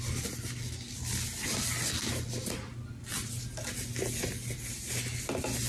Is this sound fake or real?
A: real